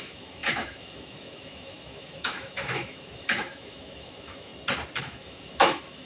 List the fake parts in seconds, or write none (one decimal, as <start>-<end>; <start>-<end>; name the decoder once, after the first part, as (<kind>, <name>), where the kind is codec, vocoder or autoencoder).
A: 0.0-4.5 (autoencoder, DAC-VAE); 5.0-6.1